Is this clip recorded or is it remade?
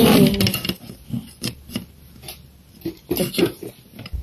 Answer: recorded